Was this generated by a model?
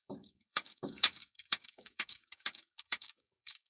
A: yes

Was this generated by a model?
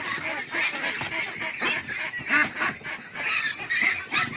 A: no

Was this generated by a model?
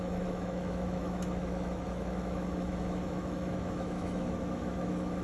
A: yes